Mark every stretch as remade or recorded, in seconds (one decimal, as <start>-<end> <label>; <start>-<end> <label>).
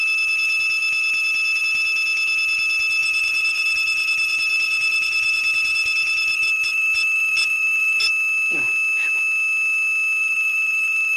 0.0-3.0 recorded; 3.0-8.1 remade; 8.1-10.2 recorded; 10.2-11.2 remade